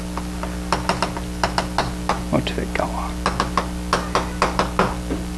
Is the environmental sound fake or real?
real